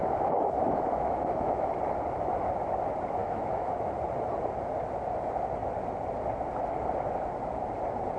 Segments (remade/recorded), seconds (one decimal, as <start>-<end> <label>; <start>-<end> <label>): 0.0-1.7 remade; 1.7-3.2 recorded; 3.2-3.9 remade; 3.9-8.2 recorded